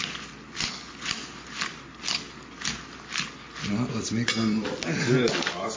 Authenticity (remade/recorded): recorded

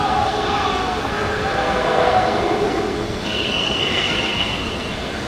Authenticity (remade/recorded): remade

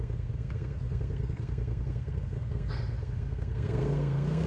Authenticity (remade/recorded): remade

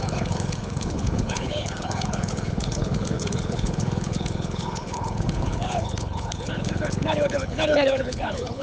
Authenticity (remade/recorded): remade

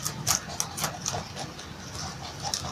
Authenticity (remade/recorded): recorded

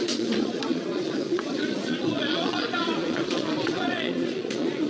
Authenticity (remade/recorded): remade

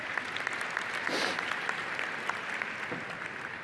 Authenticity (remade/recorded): recorded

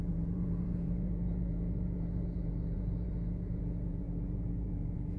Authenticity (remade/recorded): remade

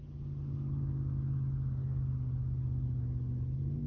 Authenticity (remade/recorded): recorded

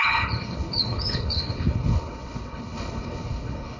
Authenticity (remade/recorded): remade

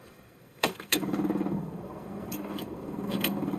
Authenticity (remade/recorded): remade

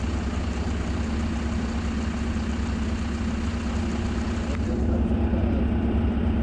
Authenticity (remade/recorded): recorded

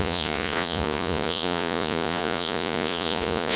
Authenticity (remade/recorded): remade